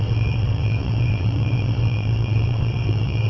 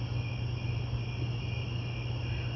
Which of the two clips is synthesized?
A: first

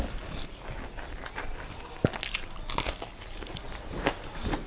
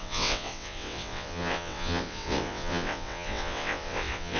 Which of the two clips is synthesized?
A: second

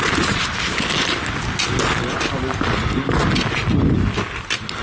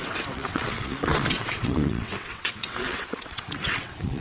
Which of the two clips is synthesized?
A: second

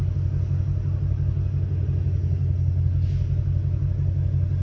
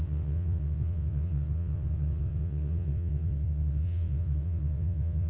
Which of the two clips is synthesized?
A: second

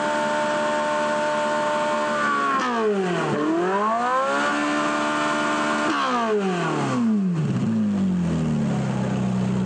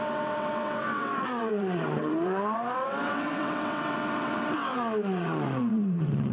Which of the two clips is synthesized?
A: second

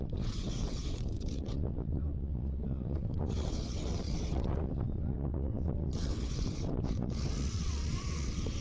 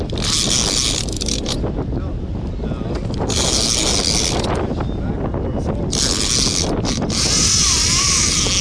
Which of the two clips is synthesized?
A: first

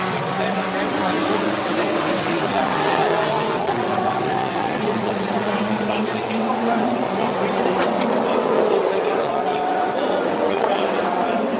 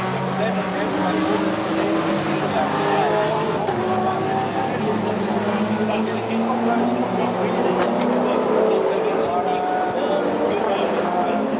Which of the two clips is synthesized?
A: first